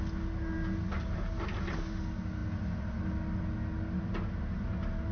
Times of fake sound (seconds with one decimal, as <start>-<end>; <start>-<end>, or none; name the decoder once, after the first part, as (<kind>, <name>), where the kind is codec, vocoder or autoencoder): none

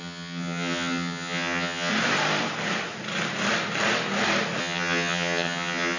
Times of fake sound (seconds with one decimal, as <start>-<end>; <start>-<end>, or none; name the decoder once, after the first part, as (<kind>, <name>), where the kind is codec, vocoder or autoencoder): 0.0-1.9 (vocoder, HiFi-GAN); 4.6-6.0

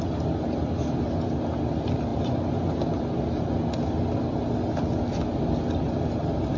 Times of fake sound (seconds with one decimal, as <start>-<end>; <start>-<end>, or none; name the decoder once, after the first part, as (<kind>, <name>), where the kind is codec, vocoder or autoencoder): none